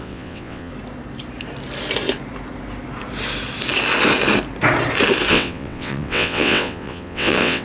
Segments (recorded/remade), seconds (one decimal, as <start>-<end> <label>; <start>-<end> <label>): 0.0-0.7 remade; 0.7-5.3 recorded; 5.3-7.6 remade